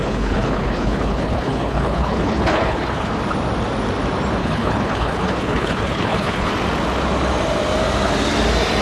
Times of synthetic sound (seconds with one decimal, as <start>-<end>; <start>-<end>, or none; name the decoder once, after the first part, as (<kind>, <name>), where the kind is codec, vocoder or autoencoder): 0.0-3.1 (codec, HILCodec); 4.4-6.5